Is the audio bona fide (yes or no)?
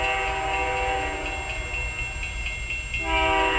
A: yes